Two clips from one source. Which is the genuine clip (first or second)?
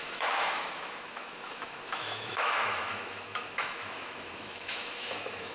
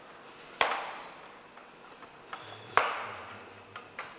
second